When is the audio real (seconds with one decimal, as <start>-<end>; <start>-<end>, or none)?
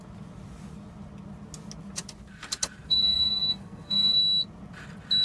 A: 0.0-2.9; 4.2-5.2